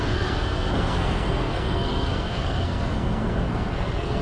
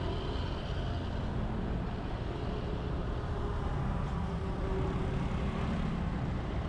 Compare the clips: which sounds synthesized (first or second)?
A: first